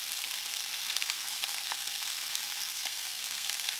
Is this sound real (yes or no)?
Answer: no